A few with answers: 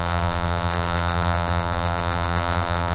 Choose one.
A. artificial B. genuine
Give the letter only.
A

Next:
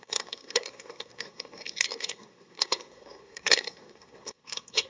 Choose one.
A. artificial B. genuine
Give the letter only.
A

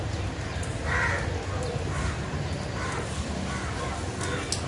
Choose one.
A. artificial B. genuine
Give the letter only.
B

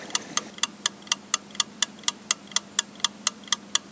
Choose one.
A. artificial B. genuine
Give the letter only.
B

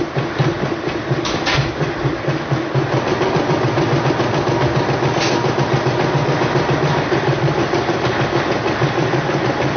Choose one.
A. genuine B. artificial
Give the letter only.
A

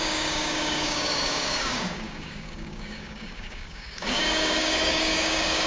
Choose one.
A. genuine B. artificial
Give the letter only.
B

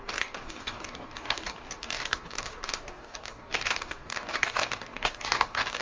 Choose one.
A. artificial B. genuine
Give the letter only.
A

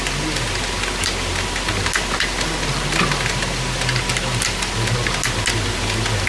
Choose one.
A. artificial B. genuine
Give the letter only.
B